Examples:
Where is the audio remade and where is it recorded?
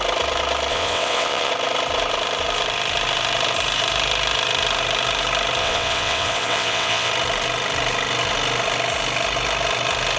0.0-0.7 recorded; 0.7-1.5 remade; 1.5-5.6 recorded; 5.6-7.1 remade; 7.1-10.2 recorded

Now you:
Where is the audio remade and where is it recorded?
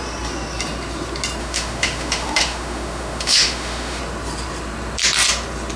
0.0-1.4 recorded; 1.4-4.0 remade; 4.0-5.8 recorded